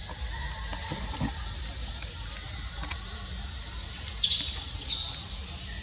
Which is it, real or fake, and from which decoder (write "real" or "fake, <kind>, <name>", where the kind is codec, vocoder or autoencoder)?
real